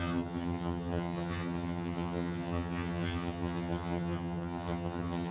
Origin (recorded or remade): remade